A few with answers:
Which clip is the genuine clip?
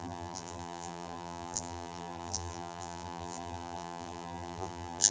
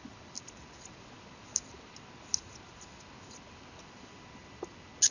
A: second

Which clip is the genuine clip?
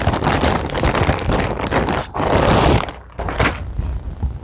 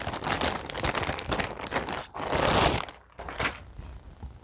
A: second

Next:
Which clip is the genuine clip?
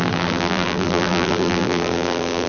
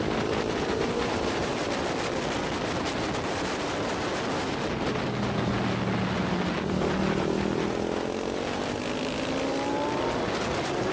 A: second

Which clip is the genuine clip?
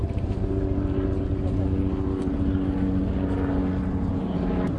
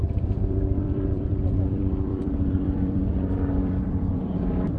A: first